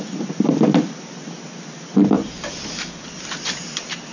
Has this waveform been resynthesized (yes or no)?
no